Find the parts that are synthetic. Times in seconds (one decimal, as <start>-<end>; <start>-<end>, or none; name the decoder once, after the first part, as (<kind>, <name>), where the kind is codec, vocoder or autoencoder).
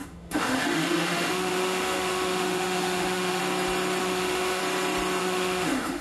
0.0-3.4 (autoencoder, DAC-VAE); 4.0-4.6; 5.2-6.0